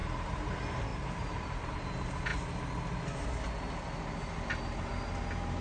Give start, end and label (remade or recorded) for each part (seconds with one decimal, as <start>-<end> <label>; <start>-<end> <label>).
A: 0.0-0.5 remade; 0.5-0.9 recorded; 0.9-1.8 remade; 1.8-5.6 recorded